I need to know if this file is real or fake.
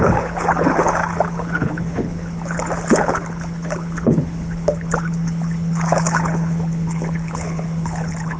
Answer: fake